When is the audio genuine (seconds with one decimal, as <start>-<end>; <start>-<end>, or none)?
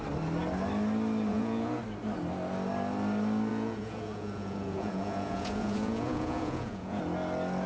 0.0-1.3; 1.8-3.5; 7.0-7.7